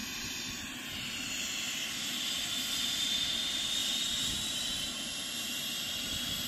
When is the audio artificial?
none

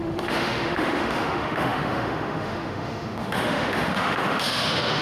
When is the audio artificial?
0.0-5.0